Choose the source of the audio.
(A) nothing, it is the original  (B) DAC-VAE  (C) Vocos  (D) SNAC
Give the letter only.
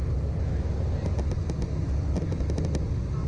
A